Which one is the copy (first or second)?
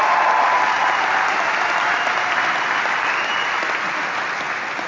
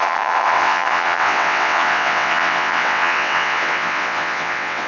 second